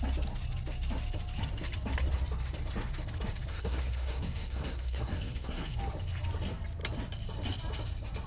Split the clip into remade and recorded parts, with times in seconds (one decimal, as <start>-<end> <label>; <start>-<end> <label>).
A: 0.0-3.5 recorded; 3.5-5.8 remade; 5.8-8.3 recorded